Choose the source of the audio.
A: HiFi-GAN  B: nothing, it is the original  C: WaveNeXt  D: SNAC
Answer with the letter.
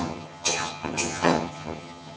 A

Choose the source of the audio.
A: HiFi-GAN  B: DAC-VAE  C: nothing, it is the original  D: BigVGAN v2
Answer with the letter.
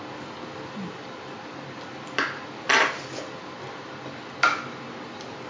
C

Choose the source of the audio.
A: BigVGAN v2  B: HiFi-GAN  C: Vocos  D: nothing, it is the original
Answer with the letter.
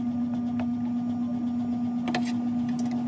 D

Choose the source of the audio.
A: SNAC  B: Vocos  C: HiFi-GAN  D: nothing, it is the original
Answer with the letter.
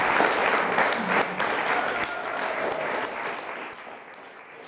D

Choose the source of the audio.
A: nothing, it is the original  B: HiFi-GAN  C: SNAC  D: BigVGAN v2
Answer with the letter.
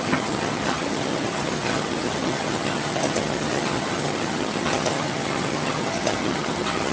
B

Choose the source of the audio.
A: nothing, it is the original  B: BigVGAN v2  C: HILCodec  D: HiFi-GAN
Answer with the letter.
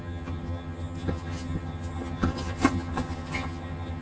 D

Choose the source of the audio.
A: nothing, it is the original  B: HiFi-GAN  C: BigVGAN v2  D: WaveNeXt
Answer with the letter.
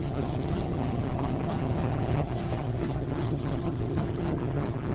B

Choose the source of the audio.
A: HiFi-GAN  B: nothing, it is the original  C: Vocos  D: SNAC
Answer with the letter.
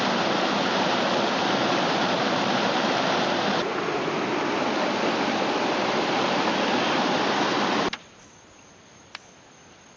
B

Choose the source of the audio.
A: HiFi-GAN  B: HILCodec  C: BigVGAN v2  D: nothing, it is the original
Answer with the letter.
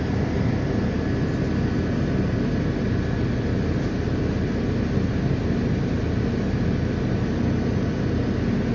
D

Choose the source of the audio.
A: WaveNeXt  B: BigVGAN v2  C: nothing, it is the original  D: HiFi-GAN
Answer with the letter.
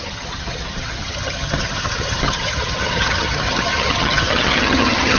D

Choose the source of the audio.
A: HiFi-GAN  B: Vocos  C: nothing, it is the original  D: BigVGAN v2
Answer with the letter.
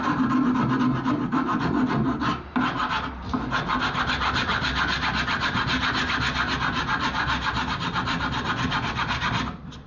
C